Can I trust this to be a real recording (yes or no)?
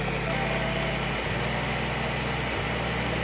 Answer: yes